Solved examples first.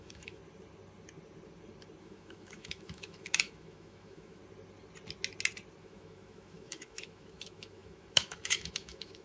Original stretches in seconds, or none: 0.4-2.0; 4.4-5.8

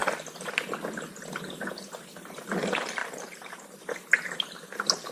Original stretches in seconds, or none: 0.0-5.1

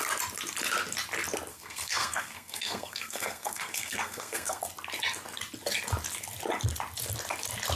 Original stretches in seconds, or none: 0.0-1.5; 4.6-7.8

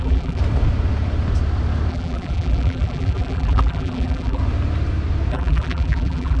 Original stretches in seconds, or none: 0.4-1.9; 4.4-5.3

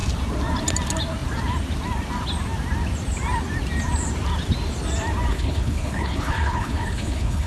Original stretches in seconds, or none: 0.0-5.3

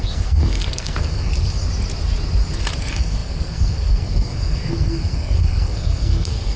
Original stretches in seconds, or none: 1.3-2.8